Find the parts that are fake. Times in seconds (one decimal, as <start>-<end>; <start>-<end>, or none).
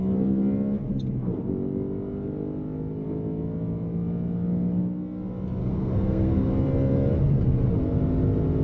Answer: 5.6-6.5